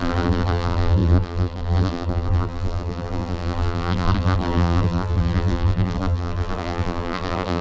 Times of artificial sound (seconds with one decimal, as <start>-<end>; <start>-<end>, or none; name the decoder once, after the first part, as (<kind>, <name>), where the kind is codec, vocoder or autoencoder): 0.0-7.6 (vocoder, BigVGAN v2)